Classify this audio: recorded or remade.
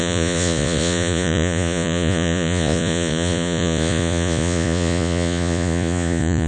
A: remade